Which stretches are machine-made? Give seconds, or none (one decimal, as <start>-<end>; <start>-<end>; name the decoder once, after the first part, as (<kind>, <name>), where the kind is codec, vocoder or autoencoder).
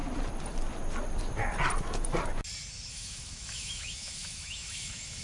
2.9-5.2 (autoencoder, DAC-VAE)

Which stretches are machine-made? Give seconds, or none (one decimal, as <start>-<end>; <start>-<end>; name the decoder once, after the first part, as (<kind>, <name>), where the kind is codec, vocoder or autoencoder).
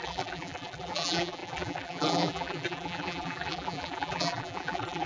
0.0-5.1 (vocoder, BigVGAN v2)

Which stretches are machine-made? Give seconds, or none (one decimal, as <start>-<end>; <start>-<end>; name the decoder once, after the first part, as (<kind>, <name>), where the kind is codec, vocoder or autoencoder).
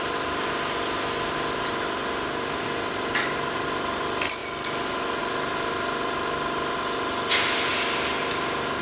0.0-4.4 (vocoder, BigVGAN v2); 5.2-7.7; 8.3-8.8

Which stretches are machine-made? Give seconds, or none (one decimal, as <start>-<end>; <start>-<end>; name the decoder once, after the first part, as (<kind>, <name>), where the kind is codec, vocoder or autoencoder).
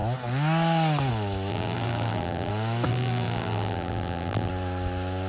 1.5-2.5 (vocoder, BigVGAN v2); 2.9-4.5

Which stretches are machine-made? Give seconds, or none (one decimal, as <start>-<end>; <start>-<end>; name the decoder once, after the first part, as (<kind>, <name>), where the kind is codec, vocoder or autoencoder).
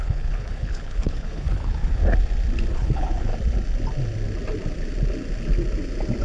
0.0-2.0 (codec, HILCodec); 2.7-3.3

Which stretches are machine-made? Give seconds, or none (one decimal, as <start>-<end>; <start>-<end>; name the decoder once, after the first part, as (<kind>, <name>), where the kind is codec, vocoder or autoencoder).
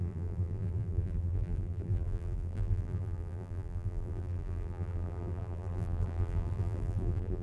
0.0-7.4 (vocoder, BigVGAN v2)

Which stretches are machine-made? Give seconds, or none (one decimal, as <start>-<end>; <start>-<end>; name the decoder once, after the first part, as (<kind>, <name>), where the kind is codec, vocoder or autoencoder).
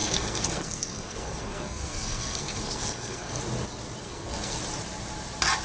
0.0-3.4 (codec, SNAC); 4.0-4.6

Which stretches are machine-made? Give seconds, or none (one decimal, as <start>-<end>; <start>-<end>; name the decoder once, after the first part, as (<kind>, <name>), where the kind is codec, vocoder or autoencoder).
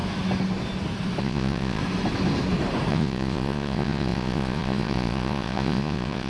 1.2-1.8 (vocoder, Vocos); 2.9-6.3